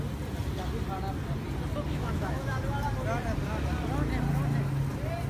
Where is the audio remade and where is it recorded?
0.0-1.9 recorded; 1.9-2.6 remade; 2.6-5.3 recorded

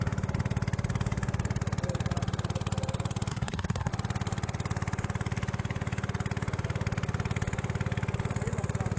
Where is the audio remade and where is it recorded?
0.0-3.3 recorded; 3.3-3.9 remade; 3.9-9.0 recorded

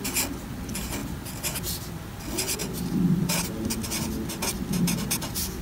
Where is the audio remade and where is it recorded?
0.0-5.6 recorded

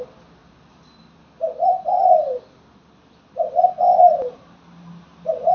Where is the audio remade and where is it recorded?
0.0-0.4 recorded; 0.4-3.7 remade; 3.7-5.5 recorded

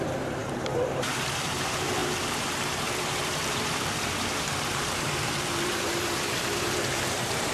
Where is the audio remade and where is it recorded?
0.0-7.5 remade

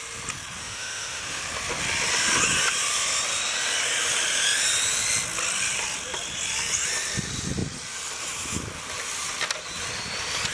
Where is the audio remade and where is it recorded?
0.0-0.6 recorded; 0.6-1.4 remade; 1.4-10.5 recorded